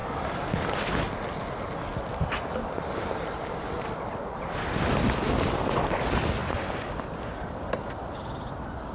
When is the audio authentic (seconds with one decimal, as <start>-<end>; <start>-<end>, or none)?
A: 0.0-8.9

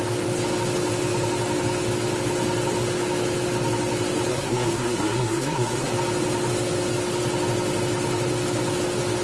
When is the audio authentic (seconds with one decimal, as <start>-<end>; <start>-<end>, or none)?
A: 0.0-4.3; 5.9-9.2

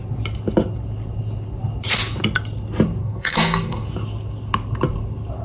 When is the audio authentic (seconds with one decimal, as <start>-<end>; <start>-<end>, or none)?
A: 0.0-3.0; 3.9-5.4

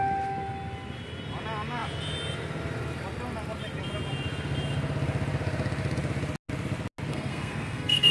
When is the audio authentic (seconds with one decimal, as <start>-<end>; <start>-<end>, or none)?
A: 0.0-7.1

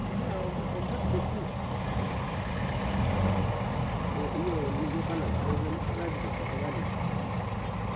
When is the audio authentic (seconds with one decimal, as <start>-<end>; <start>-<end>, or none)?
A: 0.0-8.0

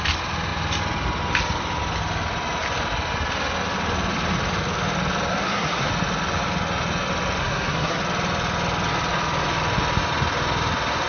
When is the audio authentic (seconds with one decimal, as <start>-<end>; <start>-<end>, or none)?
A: 0.0-5.3; 5.9-7.4; 8.0-11.1